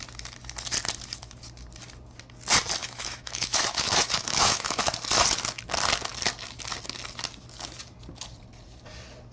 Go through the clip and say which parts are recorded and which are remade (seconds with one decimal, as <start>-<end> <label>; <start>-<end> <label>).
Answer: 0.0-2.8 recorded; 2.8-4.8 remade; 4.8-9.3 recorded